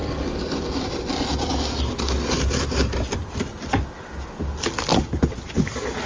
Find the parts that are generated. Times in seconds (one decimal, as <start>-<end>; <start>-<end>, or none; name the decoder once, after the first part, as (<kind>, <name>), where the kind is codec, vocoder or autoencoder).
3.2-4.2 (vocoder, BigVGAN v2)